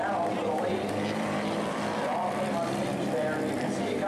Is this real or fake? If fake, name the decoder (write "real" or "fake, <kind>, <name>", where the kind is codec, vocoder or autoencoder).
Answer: fake, vocoder, BigVGAN v2